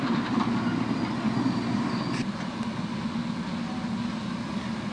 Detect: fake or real real